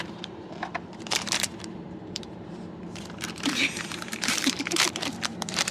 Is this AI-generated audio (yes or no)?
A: yes